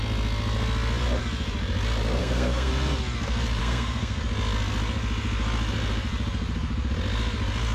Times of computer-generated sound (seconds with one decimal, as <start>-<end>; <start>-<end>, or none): 2.2-2.7; 3.6-4.2